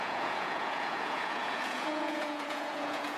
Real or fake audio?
fake